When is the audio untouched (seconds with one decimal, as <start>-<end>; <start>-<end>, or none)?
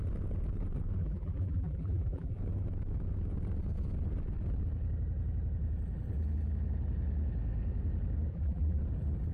0.0-1.0; 2.4-8.3; 8.8-9.3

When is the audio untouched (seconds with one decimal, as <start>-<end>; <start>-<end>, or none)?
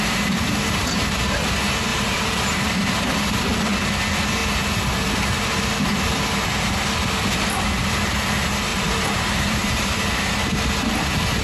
0.0-1.9; 3.4-8.7; 10.2-11.4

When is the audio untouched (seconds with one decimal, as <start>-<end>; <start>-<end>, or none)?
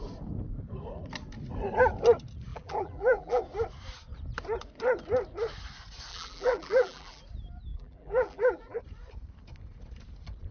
0.0-2.5; 3.4-6.1; 7.2-7.7; 8.8-10.5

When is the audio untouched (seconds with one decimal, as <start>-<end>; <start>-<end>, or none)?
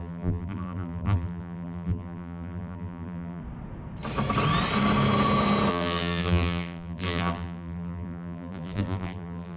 3.4-5.7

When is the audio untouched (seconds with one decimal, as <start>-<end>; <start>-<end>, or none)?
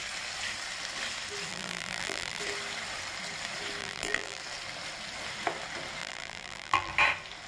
0.0-1.5; 2.4-3.8; 4.4-6.0; 6.9-7.5